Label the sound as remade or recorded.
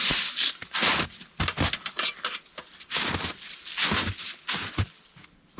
recorded